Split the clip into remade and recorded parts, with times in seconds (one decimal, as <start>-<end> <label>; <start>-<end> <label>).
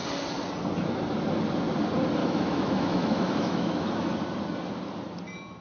0.0-2.2 recorded; 2.2-4.2 remade; 4.2-5.6 recorded